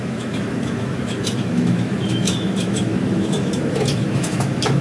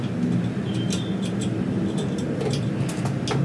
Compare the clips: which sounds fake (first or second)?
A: first